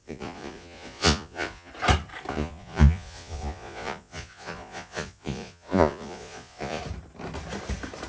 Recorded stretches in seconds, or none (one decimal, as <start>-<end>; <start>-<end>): 1.7-2.3; 6.8-8.1